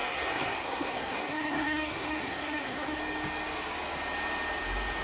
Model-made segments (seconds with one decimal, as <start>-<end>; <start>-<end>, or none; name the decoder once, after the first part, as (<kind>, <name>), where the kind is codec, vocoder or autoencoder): 0.0-3.0 (codec, SNAC)